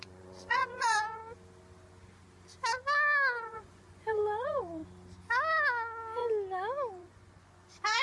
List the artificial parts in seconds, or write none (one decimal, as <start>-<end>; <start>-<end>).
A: 0.0-1.2; 3.4-4.8; 6.9-8.0